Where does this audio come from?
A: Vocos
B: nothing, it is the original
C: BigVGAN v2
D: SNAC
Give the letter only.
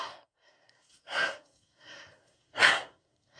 D